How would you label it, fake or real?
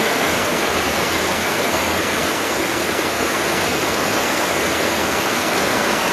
fake